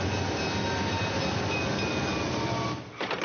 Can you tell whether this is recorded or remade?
recorded